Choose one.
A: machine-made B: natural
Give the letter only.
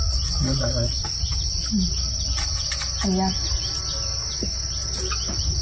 B